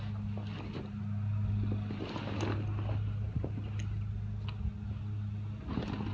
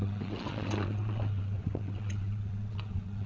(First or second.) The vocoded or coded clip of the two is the second